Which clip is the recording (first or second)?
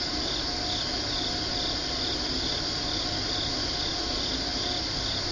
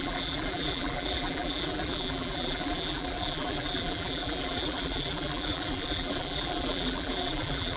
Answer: first